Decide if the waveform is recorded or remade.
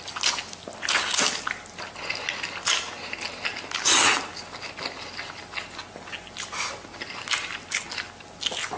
recorded